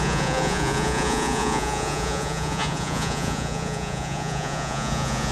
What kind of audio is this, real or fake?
fake